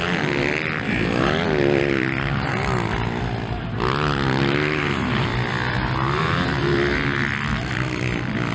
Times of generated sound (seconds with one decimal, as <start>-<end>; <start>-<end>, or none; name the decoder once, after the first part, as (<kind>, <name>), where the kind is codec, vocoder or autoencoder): none